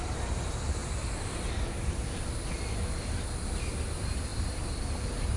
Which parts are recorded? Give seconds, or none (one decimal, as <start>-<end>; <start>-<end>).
0.0-5.4